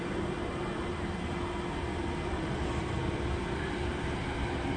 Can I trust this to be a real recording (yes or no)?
yes